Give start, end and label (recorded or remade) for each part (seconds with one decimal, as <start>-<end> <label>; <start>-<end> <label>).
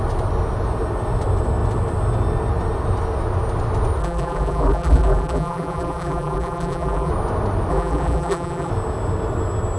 0.0-4.0 recorded; 4.0-7.1 remade; 7.1-7.7 recorded; 7.7-8.7 remade; 8.7-9.8 recorded